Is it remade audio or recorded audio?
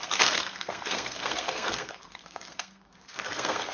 remade